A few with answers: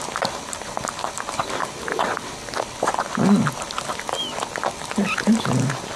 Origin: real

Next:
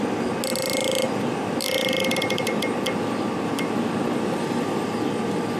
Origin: real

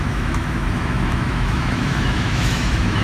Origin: fake